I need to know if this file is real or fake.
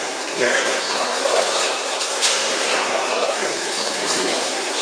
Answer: fake